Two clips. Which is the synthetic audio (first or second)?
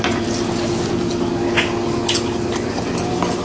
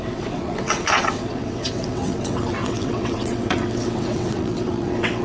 second